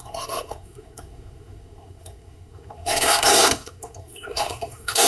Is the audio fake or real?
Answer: fake